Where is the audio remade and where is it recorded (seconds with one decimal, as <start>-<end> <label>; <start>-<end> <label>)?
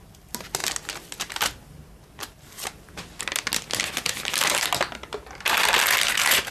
0.0-6.5 recorded